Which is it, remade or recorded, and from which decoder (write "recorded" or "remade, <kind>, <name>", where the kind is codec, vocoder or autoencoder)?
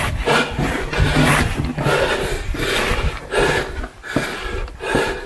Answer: recorded